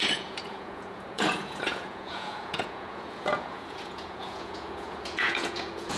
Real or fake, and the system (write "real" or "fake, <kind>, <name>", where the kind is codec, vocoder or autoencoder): fake, vocoder, Vocos